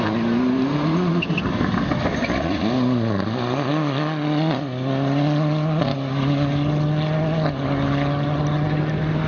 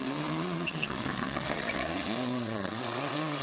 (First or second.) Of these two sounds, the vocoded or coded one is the second